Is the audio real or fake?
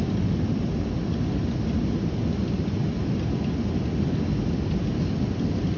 real